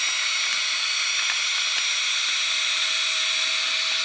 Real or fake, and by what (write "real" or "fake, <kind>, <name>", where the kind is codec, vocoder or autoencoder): fake, vocoder, BigVGAN v2